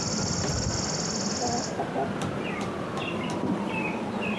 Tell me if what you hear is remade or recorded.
recorded